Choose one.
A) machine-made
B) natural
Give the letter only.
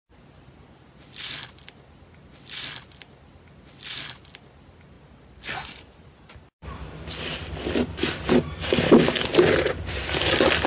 B